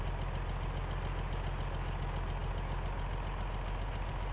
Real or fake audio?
real